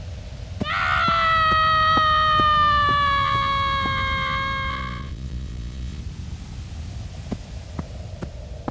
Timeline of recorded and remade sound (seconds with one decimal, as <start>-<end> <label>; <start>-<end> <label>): 0.0-4.7 recorded; 4.7-6.0 remade; 6.0-8.7 recorded